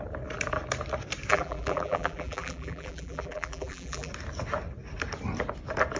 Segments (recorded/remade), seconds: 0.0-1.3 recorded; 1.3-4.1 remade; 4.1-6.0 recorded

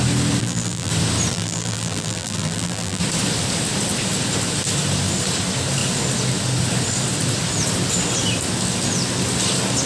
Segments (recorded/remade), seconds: 0.0-0.4 recorded; 0.4-0.9 remade; 0.9-1.3 recorded; 1.3-3.0 remade; 3.0-9.9 recorded

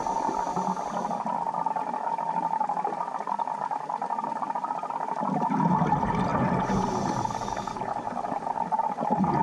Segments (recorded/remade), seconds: 0.0-9.4 recorded